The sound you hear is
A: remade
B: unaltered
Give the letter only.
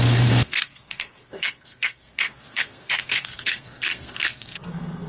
A